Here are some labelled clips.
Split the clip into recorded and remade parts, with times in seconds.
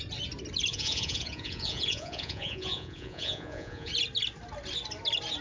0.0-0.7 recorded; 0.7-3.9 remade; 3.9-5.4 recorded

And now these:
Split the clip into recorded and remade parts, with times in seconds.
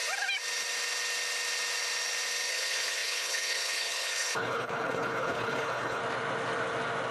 0.0-2.5 recorded; 2.5-6.0 remade; 6.0-7.1 recorded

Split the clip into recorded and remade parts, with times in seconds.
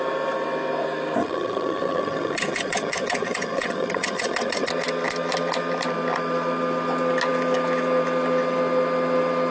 0.0-1.2 recorded; 1.2-4.7 remade; 4.7-9.5 recorded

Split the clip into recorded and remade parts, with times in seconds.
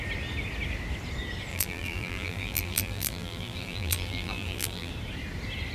0.0-1.5 recorded; 1.5-4.9 remade; 4.9-5.7 recorded